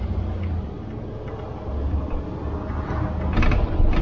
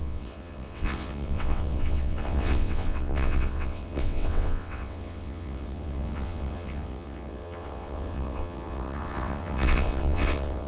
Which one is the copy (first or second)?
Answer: second